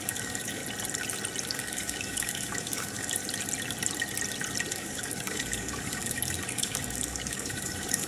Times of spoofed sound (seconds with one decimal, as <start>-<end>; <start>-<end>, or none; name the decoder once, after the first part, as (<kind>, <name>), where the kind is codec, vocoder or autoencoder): 0.0-0.6 (codec, DAC); 1.4-3.2; 4.7-8.1